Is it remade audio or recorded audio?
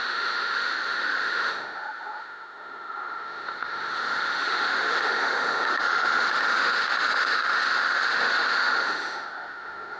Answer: remade